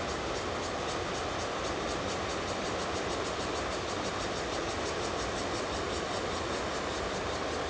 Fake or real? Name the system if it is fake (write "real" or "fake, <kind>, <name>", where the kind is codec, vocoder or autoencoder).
real